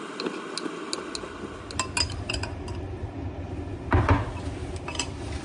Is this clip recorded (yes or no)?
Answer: yes